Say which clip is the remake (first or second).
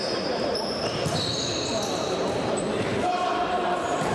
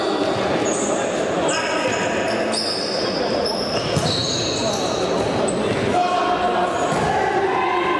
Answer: first